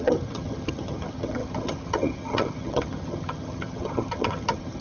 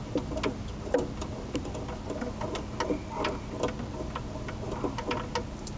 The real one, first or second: second